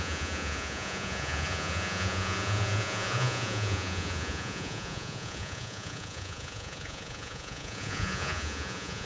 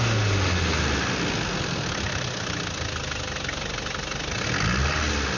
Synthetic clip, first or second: first